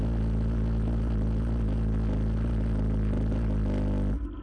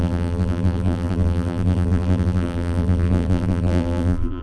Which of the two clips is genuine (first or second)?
first